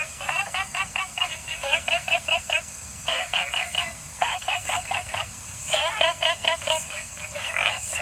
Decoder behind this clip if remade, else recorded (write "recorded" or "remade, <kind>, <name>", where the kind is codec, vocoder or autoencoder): remade, codec, SNAC